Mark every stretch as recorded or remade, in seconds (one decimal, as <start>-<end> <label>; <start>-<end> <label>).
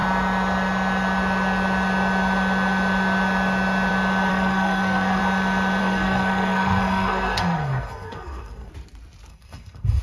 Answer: 0.0-4.3 recorded; 4.3-5.2 remade; 5.2-5.8 recorded; 5.8-8.7 remade; 8.7-9.3 recorded; 9.3-10.0 remade